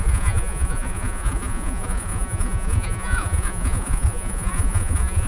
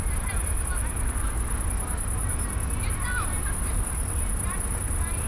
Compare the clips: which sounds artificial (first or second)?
first